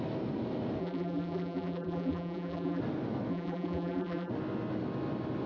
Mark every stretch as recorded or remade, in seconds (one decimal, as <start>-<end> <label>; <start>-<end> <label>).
0.0-0.8 recorded; 0.8-2.8 remade; 2.8-3.3 recorded; 3.3-4.3 remade; 4.3-5.5 recorded